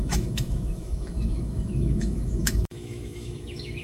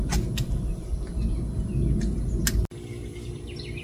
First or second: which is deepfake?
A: first